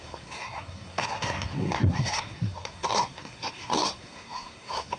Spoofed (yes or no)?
yes